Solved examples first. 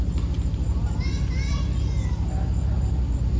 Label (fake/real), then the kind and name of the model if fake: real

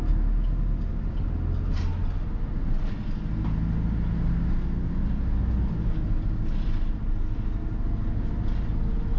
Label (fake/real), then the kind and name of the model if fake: real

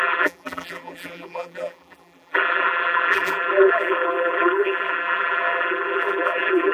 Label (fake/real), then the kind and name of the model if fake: fake, vocoder, BigVGAN v2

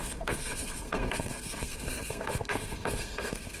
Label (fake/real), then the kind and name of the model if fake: fake, codec, SNAC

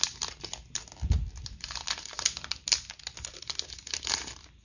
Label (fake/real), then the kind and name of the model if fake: real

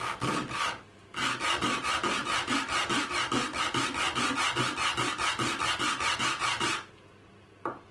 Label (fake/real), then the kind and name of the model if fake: real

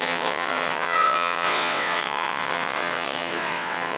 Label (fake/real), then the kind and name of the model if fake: fake, vocoder, WaveNeXt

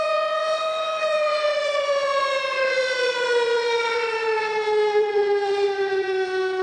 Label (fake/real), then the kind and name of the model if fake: fake, vocoder, Vocos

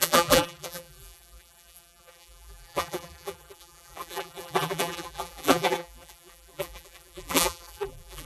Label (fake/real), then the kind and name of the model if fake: fake, vocoder, BigVGAN v2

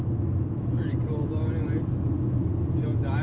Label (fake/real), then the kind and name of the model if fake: real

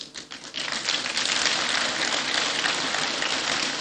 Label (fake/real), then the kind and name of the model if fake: real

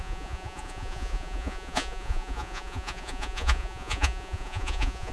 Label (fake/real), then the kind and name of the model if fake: fake, vocoder, Vocos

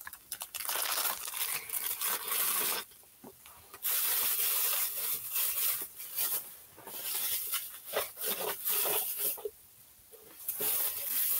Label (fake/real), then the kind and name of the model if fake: fake, vocoder, BigVGAN v2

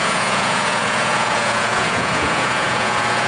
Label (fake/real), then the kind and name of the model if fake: fake, vocoder, Vocos